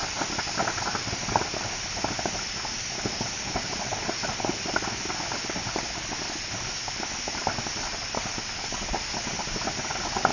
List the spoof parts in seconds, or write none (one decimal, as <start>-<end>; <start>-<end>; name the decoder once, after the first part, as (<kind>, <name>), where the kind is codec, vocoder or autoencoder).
none